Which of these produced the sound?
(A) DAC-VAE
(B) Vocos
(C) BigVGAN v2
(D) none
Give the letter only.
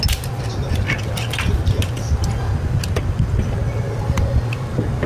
D